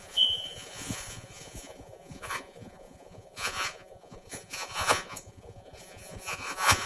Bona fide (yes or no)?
no